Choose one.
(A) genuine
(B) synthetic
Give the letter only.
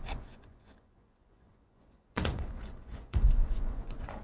B